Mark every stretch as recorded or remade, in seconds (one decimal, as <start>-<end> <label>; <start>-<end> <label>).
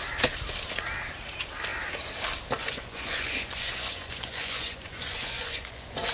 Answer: 0.0-2.6 recorded; 2.6-6.1 remade